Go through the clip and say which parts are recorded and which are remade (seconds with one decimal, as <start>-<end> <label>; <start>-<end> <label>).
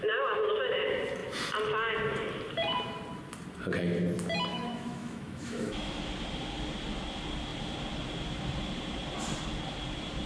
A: 0.0-4.5 recorded; 4.5-6.0 remade; 6.0-10.3 recorded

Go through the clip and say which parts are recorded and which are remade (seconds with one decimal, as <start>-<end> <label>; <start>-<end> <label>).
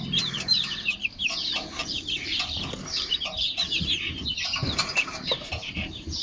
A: 0.0-1.4 remade; 1.4-3.4 recorded; 3.4-6.2 remade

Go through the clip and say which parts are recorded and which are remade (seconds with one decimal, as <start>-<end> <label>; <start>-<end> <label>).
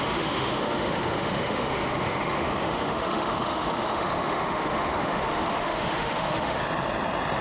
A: 0.0-6.6 remade; 6.6-7.4 recorded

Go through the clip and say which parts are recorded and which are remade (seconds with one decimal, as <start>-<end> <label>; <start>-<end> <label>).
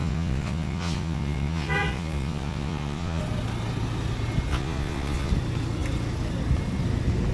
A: 0.0-3.2 remade; 3.2-4.5 recorded; 4.5-5.3 remade; 5.3-7.3 recorded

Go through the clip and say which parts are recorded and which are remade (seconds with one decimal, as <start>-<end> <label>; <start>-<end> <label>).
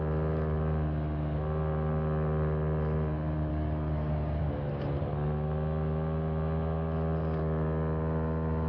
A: 0.0-3.5 recorded; 3.5-4.4 remade; 4.4-8.7 recorded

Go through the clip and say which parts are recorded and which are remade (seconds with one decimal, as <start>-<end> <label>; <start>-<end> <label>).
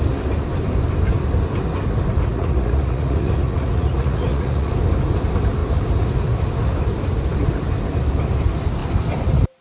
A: 0.0-2.3 recorded; 2.3-4.7 remade; 4.7-9.6 recorded